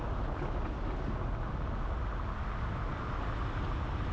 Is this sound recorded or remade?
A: recorded